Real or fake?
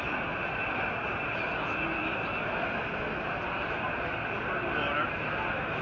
real